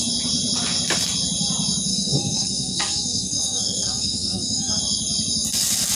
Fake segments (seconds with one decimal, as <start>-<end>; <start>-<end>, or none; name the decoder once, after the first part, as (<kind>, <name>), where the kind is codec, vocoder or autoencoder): 1.9-4.8 (codec, SNAC)